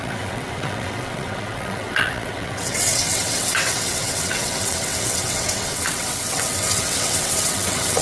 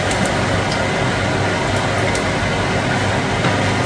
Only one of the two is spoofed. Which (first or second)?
first